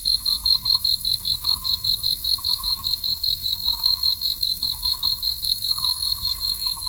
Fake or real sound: fake